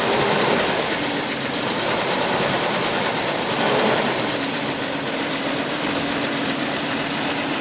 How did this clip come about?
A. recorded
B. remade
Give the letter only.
B